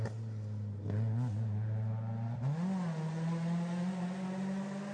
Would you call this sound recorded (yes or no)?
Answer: yes